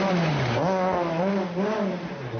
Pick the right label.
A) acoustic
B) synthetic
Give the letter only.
A